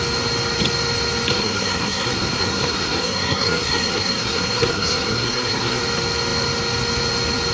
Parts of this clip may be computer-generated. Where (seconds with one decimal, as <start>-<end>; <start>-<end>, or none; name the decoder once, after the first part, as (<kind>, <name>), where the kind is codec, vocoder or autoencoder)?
1.3-5.8 (codec, SNAC)